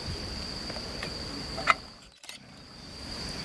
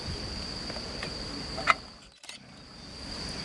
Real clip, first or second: second